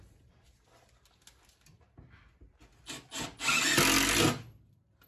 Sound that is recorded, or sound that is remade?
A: recorded